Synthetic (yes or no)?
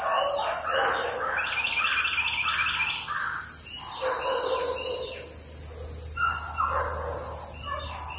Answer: no